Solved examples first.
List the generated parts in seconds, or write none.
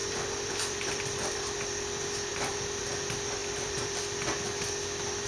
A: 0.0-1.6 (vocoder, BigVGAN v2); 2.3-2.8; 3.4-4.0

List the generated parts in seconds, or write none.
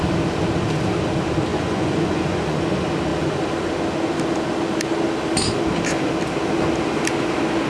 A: 1.5-2.6 (vocoder, Vocos)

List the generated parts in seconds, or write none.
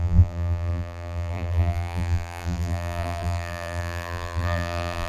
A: 0.0-5.1 (vocoder, BigVGAN v2)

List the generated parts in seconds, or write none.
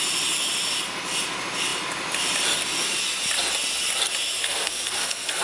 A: 4.4-5.4 (codec, SNAC)